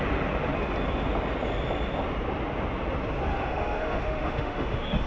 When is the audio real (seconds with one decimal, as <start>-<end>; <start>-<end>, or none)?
0.0-3.3